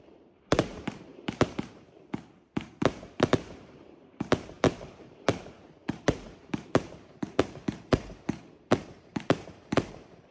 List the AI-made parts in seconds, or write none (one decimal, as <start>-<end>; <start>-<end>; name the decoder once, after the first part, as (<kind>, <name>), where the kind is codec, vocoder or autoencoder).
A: 0.0-10.3 (vocoder, BigVGAN v2)